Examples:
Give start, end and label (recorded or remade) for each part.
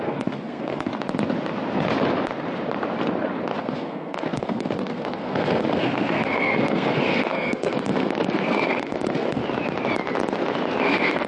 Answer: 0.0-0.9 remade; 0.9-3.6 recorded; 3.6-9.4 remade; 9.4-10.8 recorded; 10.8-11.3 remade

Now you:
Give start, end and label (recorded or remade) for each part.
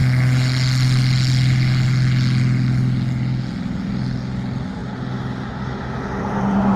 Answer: 0.0-6.8 recorded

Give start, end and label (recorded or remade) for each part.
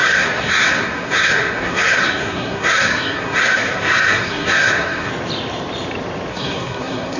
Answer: 0.0-5.1 remade; 5.1-6.3 recorded; 6.3-7.2 remade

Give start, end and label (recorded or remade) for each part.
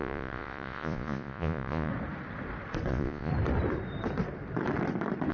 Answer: 0.0-1.9 remade; 1.9-2.9 recorded; 2.9-3.3 remade; 3.3-5.3 recorded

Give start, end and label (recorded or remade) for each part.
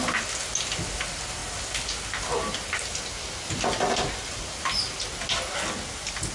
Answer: 0.0-6.3 recorded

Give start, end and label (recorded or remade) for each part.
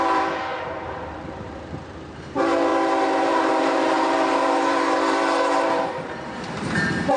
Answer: 0.0-2.7 remade; 2.7-3.2 recorded; 3.2-7.2 remade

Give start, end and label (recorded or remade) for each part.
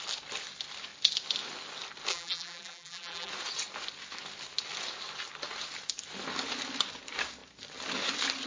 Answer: 0.0-2.1 recorded; 2.1-3.3 remade; 3.3-8.5 recorded